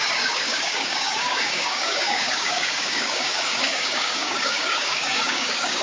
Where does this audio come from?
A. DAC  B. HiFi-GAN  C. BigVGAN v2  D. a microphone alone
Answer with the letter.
A